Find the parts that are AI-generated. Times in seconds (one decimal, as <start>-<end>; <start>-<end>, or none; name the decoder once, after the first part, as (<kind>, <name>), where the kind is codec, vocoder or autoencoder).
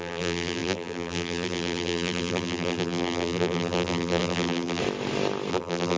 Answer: 0.0-4.8 (vocoder, BigVGAN v2); 5.5-6.0